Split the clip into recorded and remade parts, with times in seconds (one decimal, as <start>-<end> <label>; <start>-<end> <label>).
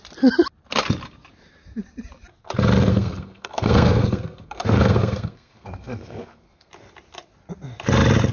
0.0-2.9 recorded; 2.9-6.7 remade; 6.7-8.3 recorded